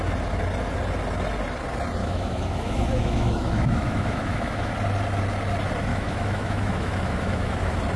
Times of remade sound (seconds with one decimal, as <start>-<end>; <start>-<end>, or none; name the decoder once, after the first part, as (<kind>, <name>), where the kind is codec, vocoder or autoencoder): 2.0-4.7 (autoencoder, DAC-VAE); 5.9-7.6